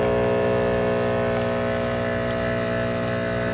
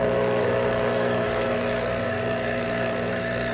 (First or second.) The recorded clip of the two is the first